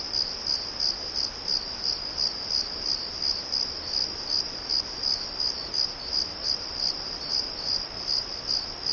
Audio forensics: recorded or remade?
recorded